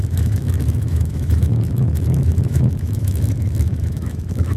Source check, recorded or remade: remade